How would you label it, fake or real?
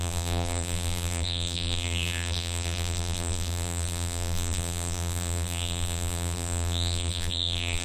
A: fake